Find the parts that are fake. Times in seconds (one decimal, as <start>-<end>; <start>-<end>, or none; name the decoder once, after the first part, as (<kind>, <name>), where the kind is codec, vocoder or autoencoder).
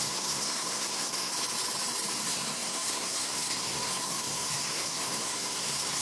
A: 0.0-1.3 (codec, SNAC); 2.2-6.0